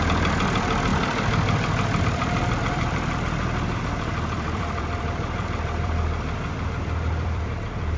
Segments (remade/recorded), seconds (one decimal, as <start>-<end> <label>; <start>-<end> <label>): 0.0-8.0 remade